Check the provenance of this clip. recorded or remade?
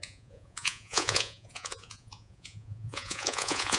remade